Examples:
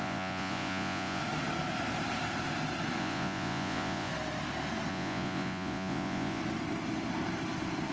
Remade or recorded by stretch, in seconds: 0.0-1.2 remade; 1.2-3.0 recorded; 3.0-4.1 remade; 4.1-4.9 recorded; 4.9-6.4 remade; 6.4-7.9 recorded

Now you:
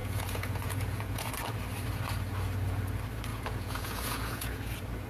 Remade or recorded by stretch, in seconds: 0.0-1.3 remade; 1.3-3.3 recorded; 3.3-4.6 remade; 4.6-5.1 recorded

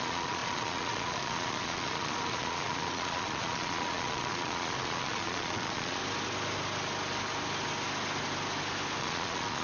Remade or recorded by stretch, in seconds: 0.0-6.0 remade; 6.0-9.0 recorded; 9.0-9.6 remade